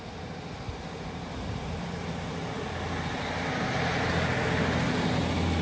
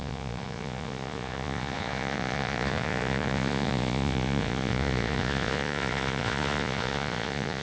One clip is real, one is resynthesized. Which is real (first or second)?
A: first